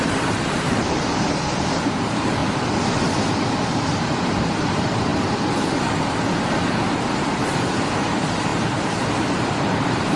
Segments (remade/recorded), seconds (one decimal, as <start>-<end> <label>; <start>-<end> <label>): 0.0-2.4 remade; 2.4-3.7 recorded; 3.7-5.1 remade; 5.1-7.2 recorded; 7.2-10.2 remade